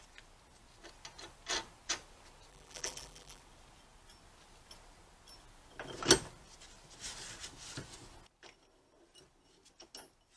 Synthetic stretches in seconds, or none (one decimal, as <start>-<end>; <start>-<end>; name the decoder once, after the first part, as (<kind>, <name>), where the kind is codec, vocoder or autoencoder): 2.5-3.4 (vocoder, BigVGAN v2)